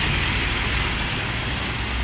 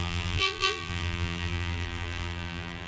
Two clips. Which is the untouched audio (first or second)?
first